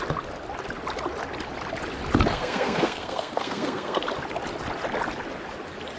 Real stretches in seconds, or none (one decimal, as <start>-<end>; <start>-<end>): 0.0-2.3; 4.0-6.0